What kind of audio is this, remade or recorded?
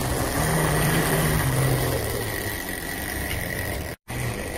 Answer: remade